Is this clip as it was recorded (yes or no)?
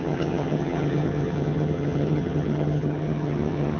no